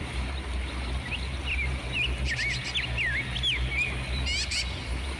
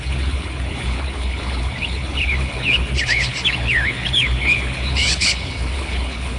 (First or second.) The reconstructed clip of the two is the second